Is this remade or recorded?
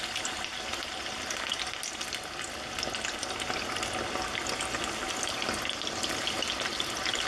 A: recorded